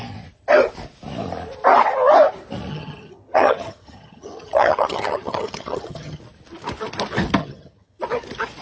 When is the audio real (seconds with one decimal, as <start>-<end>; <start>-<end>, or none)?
0.0-2.7; 6.2-7.4; 8.0-8.6

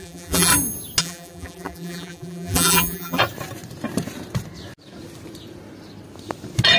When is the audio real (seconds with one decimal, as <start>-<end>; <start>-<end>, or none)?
0.5-1.0; 3.2-6.8

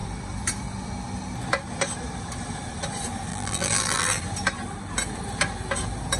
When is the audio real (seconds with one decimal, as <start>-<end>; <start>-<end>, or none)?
0.0-3.3; 4.2-6.2

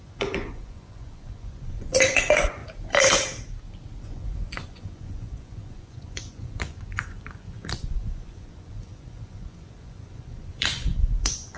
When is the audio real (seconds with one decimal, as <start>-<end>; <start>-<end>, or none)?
2.6-4.0

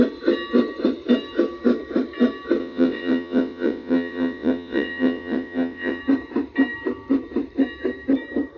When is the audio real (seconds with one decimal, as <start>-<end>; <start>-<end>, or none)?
0.0-2.6; 6.0-8.6

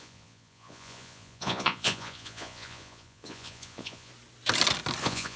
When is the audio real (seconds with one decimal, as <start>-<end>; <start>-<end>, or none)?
4.1-5.0

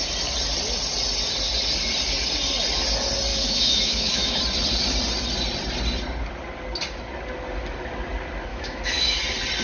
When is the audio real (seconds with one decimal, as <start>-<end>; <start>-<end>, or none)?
0.0-3.3; 4.4-8.5; 9.2-9.6

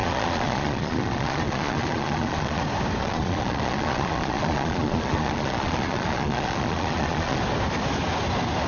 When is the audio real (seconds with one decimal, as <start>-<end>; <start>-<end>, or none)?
2.6-3.0; 7.4-8.7